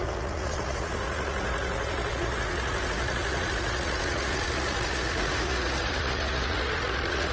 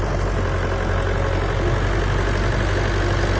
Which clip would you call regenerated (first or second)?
first